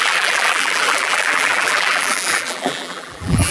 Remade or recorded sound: remade